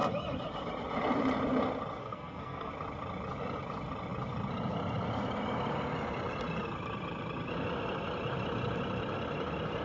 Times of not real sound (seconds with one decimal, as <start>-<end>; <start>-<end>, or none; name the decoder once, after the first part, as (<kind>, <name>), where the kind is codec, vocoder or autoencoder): 2.0-2.7 (codec, SNAC)